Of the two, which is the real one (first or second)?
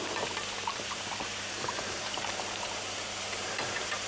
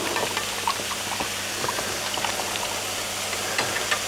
second